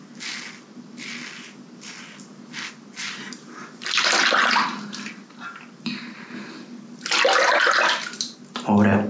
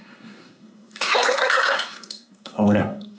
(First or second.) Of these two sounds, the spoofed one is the second